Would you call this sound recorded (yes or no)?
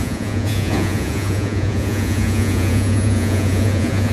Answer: no